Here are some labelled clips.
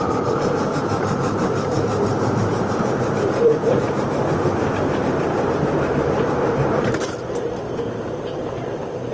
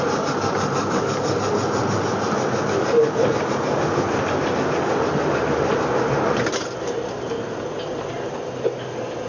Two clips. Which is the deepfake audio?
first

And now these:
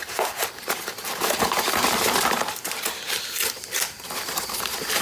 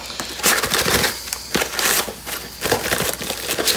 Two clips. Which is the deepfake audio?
first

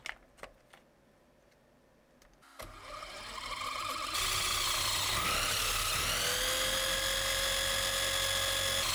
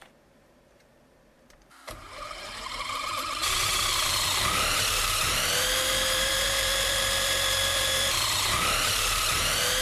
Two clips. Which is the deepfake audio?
second